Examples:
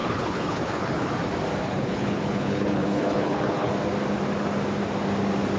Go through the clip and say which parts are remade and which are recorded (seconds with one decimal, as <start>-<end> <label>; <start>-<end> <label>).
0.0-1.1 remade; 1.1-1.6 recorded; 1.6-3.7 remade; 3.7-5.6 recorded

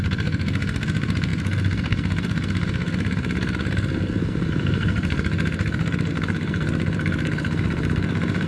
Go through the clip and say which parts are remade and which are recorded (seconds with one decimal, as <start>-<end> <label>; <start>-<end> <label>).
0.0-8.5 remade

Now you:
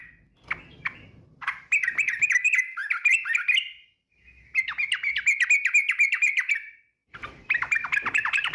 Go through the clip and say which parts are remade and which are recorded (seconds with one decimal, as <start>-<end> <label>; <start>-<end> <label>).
0.0-0.7 recorded; 0.7-2.8 remade; 2.8-6.1 recorded; 6.1-8.5 remade

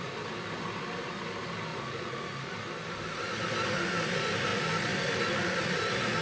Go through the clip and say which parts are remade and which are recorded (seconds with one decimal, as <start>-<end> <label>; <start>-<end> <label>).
0.0-1.7 recorded; 1.7-2.3 remade; 2.3-6.2 recorded

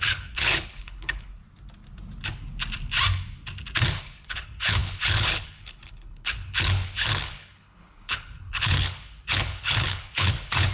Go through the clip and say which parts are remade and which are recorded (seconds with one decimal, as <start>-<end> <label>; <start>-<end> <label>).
0.0-1.4 remade; 1.4-4.0 recorded; 4.0-10.7 remade